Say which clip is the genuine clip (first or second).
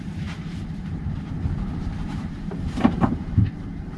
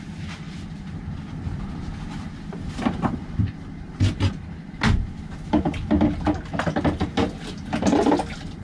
second